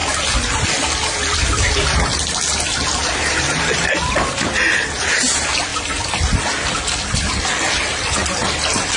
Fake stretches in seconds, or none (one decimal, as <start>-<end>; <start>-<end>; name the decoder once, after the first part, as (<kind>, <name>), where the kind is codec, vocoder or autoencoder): none